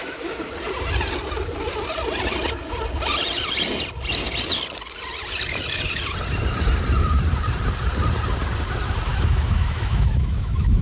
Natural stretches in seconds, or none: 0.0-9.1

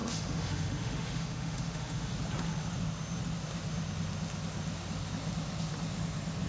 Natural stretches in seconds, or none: 2.1-6.5

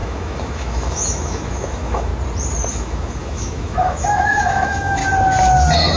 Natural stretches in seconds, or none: 2.1-2.7; 5.0-6.0

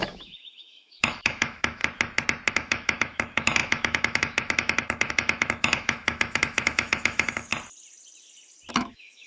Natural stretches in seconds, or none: 1.8-2.5; 7.5-8.7

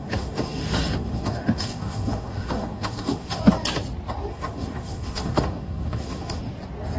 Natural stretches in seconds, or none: 3.4-4.3; 6.4-7.0

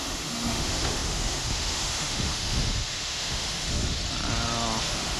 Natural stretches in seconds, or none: 4.0-4.8

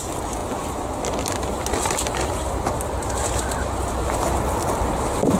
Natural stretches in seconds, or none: 0.0-5.4

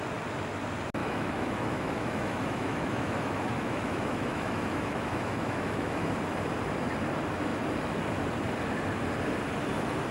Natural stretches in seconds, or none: 0.0-1.0; 6.1-10.1